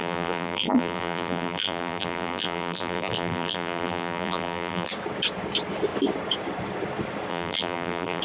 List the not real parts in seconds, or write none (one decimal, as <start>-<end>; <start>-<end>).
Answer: 0.0-4.9; 7.3-8.2